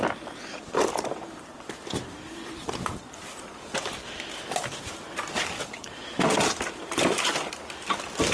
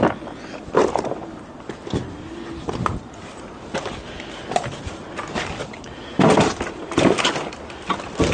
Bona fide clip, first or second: second